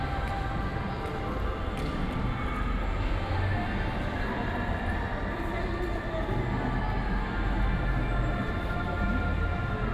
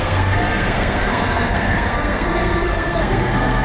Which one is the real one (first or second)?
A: first